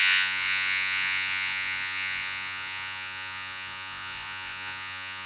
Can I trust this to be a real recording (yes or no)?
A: no